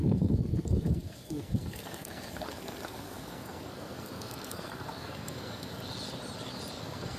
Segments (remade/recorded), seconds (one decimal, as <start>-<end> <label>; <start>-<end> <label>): 0.0-5.7 remade; 5.7-6.8 recorded; 6.8-7.2 remade